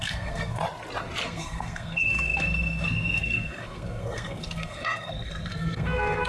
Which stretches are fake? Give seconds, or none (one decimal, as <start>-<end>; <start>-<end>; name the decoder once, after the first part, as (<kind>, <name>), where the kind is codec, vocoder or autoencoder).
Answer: 0.0-0.6 (codec, SNAC); 1.2-6.3